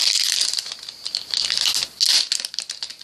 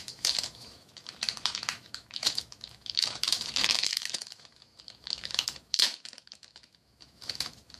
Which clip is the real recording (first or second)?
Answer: first